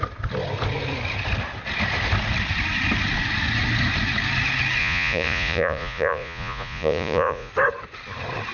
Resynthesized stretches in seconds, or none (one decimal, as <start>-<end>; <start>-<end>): 4.8-7.5